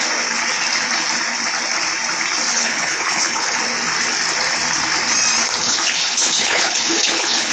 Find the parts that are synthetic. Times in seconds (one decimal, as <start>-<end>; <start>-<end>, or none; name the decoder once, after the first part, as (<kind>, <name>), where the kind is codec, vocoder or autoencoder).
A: 2.5-3.6 (codec, HILCodec); 5.6-7.5